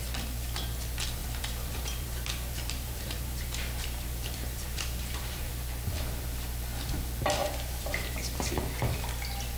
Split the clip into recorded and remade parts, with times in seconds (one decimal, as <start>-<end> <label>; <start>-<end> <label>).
0.0-1.2 recorded; 1.2-5.5 remade; 5.5-7.4 recorded; 7.4-8.6 remade; 8.6-9.6 recorded